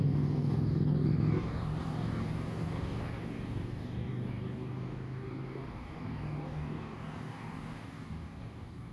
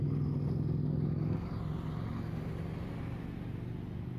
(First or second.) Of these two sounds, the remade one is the first